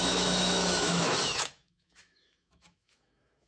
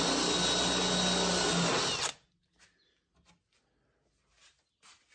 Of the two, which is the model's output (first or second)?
first